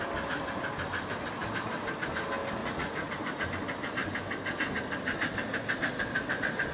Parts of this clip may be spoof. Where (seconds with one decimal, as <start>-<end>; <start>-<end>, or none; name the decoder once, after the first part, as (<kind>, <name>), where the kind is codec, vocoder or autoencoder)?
2.6-3.5 (vocoder, Vocos)

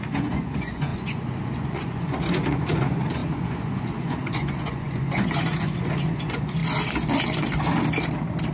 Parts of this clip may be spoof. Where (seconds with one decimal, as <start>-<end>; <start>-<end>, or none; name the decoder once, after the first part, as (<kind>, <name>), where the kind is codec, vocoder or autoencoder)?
0.0-6.6 (vocoder, Vocos)

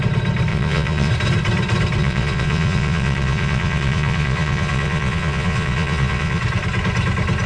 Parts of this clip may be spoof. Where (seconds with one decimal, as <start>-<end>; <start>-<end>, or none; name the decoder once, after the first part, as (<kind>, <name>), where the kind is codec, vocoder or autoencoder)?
0.5-1.1 (vocoder, Vocos); 2.0-6.4

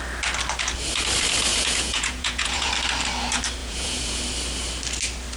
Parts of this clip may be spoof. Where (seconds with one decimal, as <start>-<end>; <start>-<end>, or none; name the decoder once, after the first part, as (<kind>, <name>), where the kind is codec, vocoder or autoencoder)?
1.5-2.7 (vocoder, Vocos); 3.6-4.2

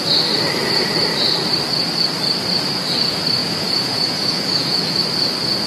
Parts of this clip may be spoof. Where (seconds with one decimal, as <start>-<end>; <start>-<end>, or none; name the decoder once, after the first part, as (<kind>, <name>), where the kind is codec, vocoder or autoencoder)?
3.4-5.0 (vocoder, Vocos)